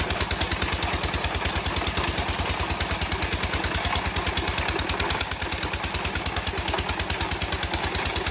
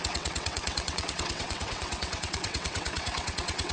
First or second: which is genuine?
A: first